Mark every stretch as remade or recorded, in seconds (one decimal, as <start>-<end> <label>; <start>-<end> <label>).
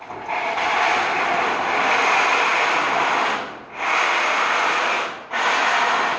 0.0-6.2 recorded